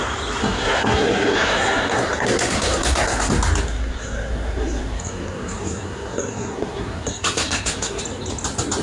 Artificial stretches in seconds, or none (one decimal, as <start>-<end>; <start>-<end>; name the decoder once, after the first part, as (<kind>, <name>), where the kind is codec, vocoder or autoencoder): 0.4-3.3 (codec, SNAC); 3.7-8.0